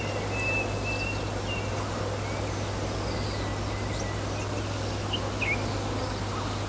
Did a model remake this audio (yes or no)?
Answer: no